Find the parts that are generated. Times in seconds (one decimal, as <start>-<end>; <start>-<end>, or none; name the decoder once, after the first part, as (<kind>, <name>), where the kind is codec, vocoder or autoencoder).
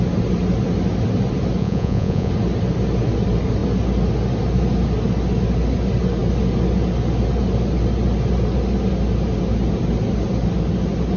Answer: 1.6-2.3 (vocoder, Vocos)